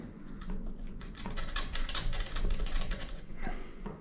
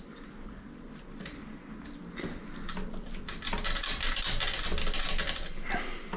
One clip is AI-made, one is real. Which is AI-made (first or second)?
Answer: first